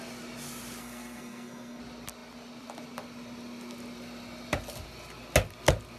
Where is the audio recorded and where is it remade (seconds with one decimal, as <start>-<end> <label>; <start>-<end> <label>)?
0.0-0.8 recorded; 0.8-1.8 remade; 1.8-6.0 recorded